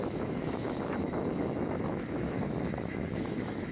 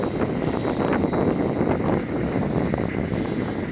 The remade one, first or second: first